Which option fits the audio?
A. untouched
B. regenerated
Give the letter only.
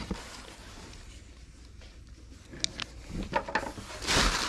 A